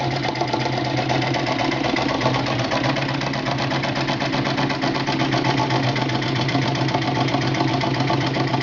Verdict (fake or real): real